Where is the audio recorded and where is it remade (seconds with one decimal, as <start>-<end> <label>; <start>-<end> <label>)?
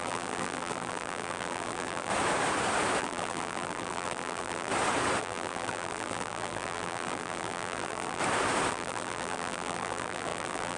0.0-2.1 remade; 2.1-3.0 recorded; 3.0-4.7 remade; 4.7-5.2 recorded; 5.2-8.2 remade; 8.2-8.7 recorded; 8.7-10.8 remade